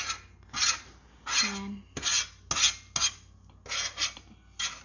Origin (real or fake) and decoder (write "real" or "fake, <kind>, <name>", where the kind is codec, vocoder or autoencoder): real